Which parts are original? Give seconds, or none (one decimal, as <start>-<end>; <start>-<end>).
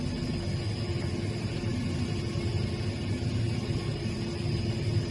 0.0-5.1